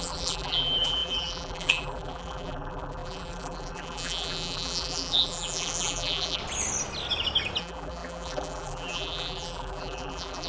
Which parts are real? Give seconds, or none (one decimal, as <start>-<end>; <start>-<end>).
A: 6.4-7.6

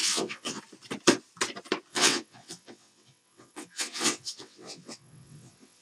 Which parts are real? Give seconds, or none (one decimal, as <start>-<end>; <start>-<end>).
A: 0.6-1.9

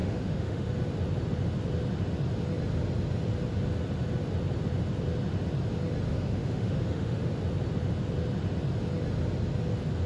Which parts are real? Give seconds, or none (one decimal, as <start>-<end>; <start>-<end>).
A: 0.7-6.1; 7.3-10.1